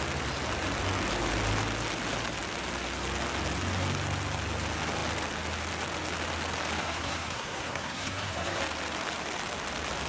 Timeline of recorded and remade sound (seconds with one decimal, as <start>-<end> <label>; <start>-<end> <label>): 0.0-6.8 recorded; 6.8-8.6 remade; 8.6-10.1 recorded